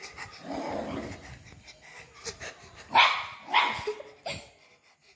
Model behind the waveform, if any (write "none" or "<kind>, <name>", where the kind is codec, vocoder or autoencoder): none